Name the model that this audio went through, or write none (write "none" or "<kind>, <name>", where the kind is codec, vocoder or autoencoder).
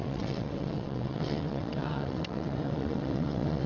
vocoder, WaveNeXt